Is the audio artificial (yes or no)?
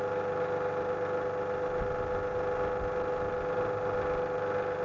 no